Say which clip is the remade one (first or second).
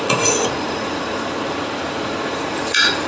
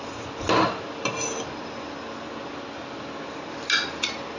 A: first